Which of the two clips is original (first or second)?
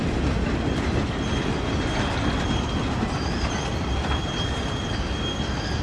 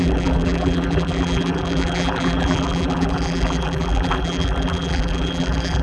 first